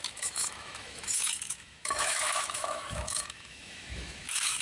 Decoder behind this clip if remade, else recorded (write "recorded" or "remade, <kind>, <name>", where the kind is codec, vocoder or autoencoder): remade, autoencoder, DAC-VAE